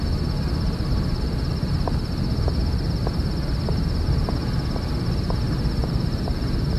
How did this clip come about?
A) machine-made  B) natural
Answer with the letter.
B